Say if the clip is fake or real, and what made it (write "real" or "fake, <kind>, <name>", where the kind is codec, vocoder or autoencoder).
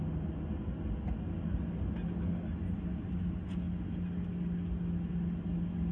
real